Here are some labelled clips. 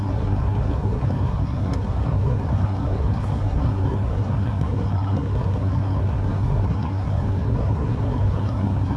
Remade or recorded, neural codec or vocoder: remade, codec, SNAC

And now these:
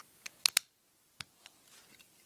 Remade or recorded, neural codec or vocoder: recorded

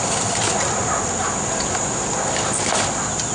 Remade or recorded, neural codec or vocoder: recorded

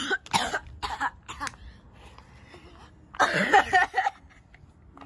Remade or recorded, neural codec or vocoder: recorded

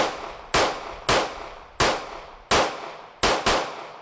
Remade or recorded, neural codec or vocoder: recorded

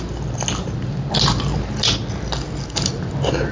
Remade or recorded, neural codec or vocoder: recorded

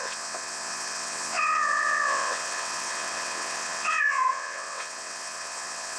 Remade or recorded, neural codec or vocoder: remade, vocoder, WaveNeXt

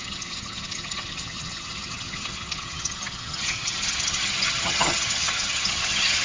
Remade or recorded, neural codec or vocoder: remade, vocoder, HiFi-GAN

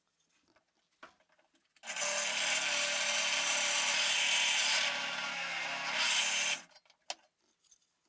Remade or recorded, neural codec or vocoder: recorded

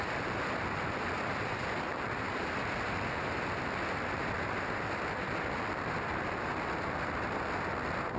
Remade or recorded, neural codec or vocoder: remade, vocoder, BigVGAN v2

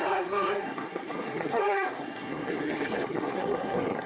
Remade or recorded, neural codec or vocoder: remade, codec, SNAC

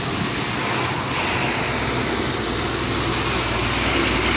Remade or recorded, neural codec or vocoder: recorded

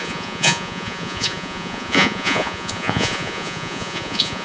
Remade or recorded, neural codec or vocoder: remade, vocoder, Vocos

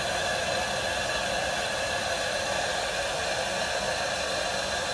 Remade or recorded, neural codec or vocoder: recorded